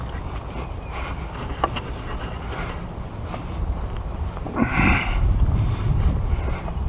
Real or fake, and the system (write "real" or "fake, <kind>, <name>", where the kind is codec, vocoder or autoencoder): real